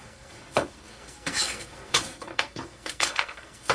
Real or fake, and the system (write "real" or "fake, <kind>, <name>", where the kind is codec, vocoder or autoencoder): fake, codec, SNAC